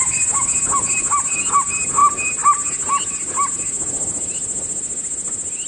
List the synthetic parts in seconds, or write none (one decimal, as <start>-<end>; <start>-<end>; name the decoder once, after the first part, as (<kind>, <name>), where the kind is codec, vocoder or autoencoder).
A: none